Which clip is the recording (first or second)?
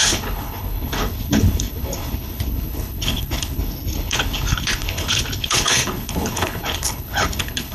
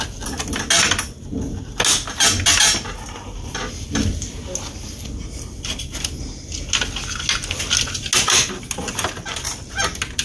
second